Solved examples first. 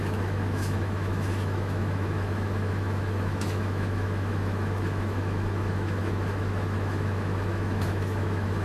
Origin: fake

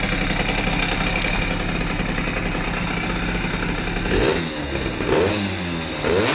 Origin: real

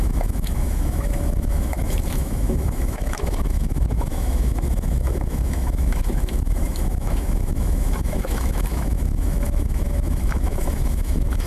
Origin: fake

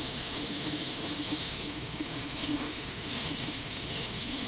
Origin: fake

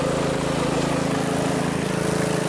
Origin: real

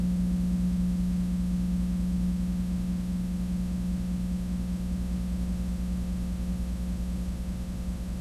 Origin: fake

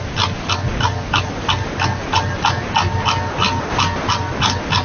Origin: real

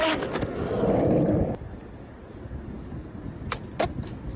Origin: real